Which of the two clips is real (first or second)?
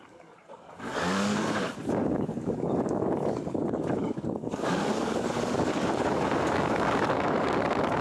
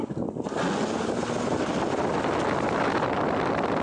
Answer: second